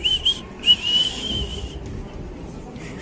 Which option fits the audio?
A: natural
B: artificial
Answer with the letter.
A